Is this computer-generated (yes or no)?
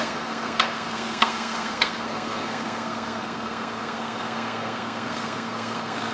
yes